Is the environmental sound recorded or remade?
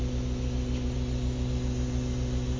recorded